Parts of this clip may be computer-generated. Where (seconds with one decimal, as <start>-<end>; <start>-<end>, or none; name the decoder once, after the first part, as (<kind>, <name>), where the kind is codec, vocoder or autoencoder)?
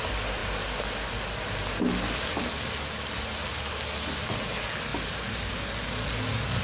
4.9-5.7 (vocoder, BigVGAN v2)